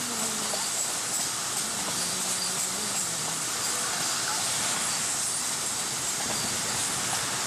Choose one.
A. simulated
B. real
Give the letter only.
B